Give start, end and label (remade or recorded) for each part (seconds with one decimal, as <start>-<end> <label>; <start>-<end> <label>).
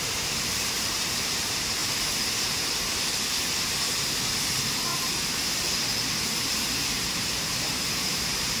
0.0-8.6 remade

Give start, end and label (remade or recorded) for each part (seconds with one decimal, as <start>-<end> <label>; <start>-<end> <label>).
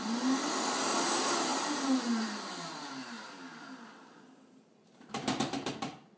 0.0-1.5 recorded; 1.5-3.3 remade; 3.3-4.7 recorded; 4.7-5.7 remade; 5.7-6.2 recorded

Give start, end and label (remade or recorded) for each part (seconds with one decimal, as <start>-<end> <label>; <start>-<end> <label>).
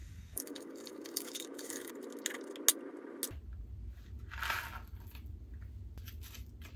0.0-1.9 remade; 1.9-6.8 recorded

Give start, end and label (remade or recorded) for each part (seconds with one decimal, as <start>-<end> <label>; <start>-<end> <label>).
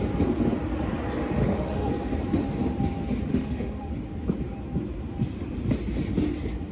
0.0-1.4 recorded; 1.4-1.9 remade; 1.9-3.3 recorded; 3.3-3.9 remade; 3.9-6.7 recorded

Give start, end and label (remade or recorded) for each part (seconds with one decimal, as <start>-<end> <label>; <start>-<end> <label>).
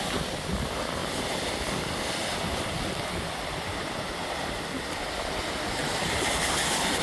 0.0-1.0 recorded; 1.0-5.1 remade; 5.1-7.0 recorded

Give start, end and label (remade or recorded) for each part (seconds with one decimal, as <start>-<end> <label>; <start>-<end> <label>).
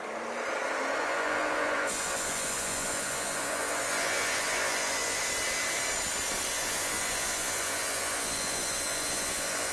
0.0-1.0 recorded; 1.0-5.2 remade; 5.2-6.5 recorded; 6.5-9.7 remade